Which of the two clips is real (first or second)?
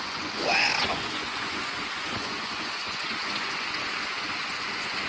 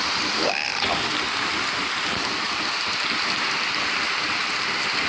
second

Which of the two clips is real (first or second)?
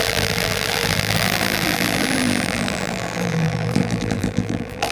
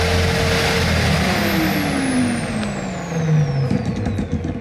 second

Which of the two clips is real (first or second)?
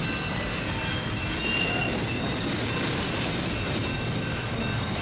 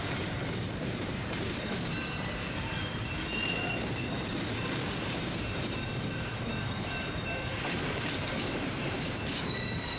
first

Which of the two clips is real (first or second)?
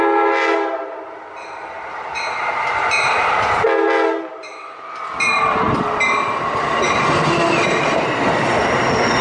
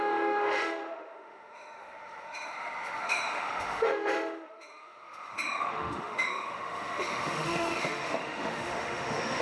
first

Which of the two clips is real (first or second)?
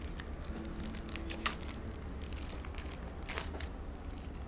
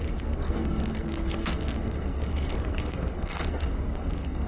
first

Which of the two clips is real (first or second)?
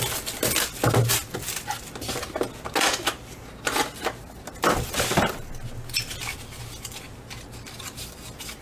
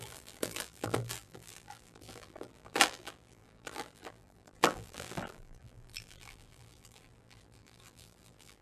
first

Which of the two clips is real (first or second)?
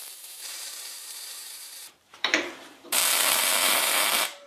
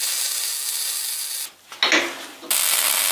second